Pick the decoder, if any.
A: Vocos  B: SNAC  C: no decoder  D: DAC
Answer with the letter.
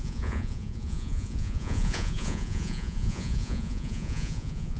A